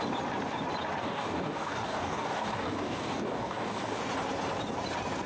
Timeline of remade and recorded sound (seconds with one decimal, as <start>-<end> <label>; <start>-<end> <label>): 0.0-1.0 recorded; 1.0-4.0 remade; 4.0-5.3 recorded